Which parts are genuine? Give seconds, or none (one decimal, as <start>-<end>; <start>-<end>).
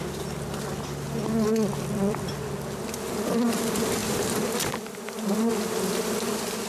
0.0-6.7